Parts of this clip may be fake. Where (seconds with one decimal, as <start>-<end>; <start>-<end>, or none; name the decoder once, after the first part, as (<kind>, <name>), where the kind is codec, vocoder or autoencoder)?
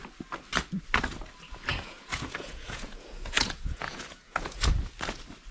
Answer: 1.7-4.6 (vocoder, Vocos)